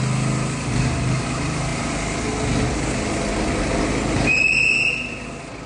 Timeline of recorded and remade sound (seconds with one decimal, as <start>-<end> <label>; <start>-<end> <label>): 0.0-5.7 recorded